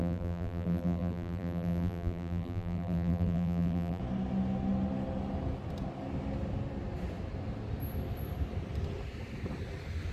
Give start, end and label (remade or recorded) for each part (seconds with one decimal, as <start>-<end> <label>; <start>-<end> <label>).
0.0-4.0 remade; 4.0-10.1 recorded